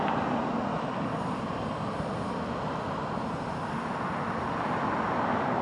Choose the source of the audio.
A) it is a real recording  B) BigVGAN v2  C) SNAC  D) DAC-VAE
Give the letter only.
A